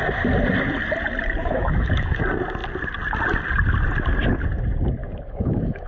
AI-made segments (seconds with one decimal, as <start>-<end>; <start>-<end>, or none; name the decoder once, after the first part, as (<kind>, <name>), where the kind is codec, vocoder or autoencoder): 1.4-2.2 (autoencoder, DAC-VAE); 5.0-5.9